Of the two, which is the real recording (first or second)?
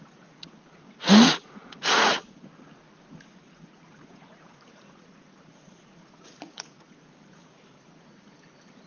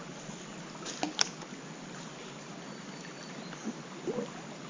second